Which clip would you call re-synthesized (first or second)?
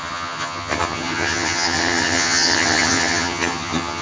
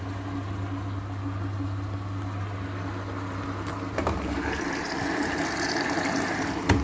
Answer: first